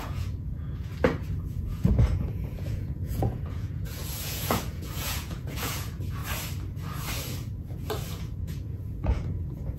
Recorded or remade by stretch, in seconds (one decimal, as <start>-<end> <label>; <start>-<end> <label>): 0.0-0.9 remade; 0.9-1.5 recorded; 1.5-6.2 remade; 6.2-8.1 recorded; 8.1-9.8 remade